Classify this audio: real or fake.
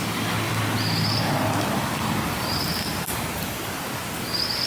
real